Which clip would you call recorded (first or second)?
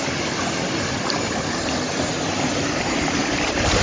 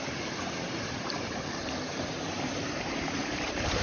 first